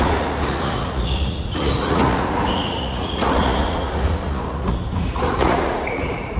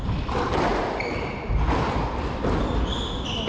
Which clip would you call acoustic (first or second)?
second